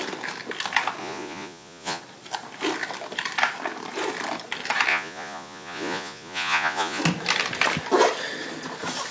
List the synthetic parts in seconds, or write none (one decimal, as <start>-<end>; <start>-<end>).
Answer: 1.0-2.0; 4.9-7.0